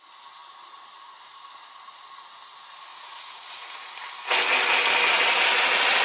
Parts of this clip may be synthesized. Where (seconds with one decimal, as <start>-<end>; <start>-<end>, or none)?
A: 2.9-4.0